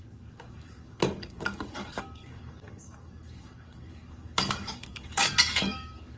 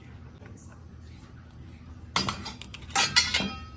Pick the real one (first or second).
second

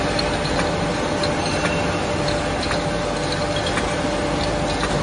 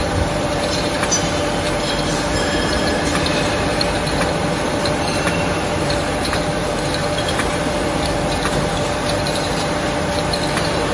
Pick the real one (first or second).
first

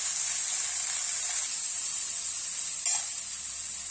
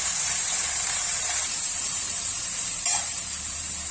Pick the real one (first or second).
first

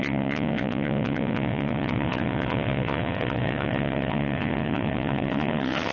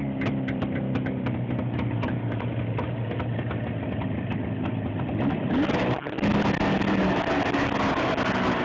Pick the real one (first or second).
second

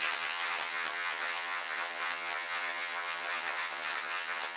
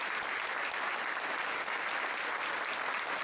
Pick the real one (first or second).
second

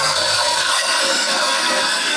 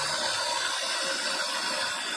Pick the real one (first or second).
second